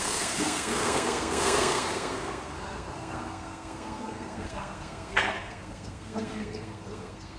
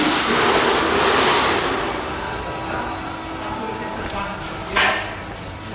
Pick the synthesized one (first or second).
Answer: first